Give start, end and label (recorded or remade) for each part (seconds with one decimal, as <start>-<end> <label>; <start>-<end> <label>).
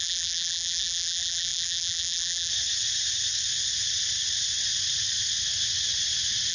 0.0-2.5 remade; 2.5-6.5 recorded